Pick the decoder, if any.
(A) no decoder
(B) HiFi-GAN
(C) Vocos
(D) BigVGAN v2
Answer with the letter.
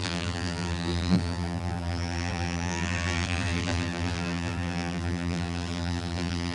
D